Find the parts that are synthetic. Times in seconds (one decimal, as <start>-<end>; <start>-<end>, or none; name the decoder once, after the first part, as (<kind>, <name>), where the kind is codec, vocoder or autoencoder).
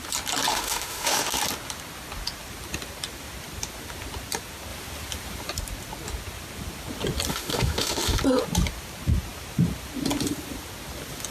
0.5-1.4 (autoencoder, DAC-VAE); 7.3-8.2